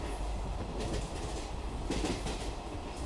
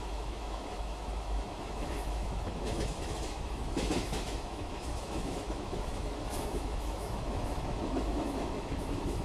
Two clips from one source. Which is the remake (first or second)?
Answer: second